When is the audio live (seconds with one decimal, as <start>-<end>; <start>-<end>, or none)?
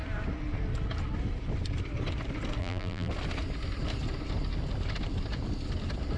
0.0-2.6; 3.1-6.2